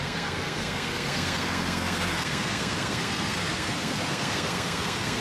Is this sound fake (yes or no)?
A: yes